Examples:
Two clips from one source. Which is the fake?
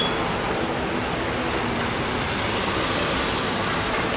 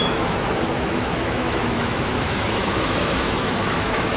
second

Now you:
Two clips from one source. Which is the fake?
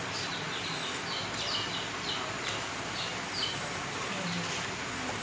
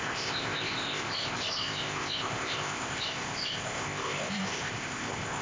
second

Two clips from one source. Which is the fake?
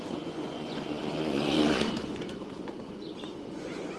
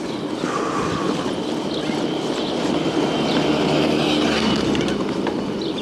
first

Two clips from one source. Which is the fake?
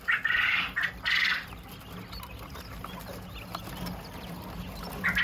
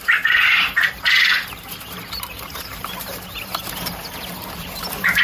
second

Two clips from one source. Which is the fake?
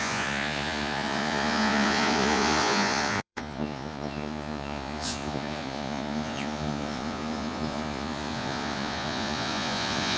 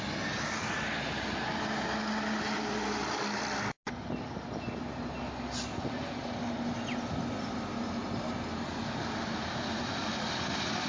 first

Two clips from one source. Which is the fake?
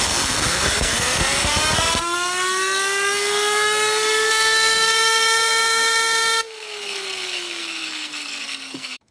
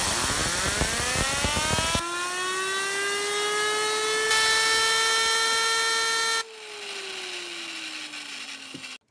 first